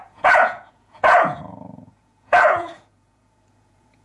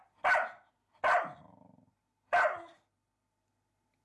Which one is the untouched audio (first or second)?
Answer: second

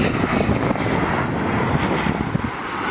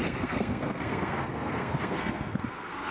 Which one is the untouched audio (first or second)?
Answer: first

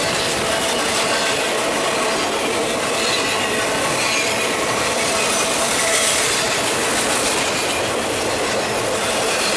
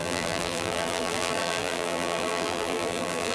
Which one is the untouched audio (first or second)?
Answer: first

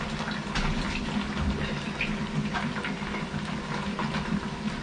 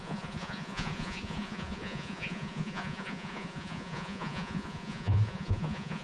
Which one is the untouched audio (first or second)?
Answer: first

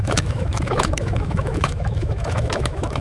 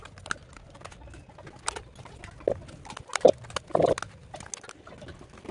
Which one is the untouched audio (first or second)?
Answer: second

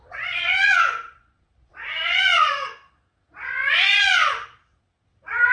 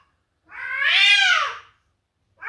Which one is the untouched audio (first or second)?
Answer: second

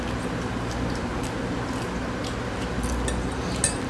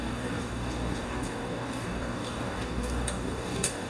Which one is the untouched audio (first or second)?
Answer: first